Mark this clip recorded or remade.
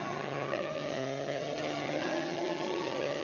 remade